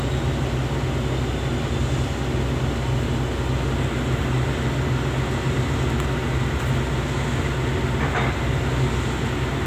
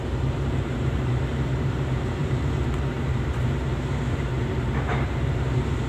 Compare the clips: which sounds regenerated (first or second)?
second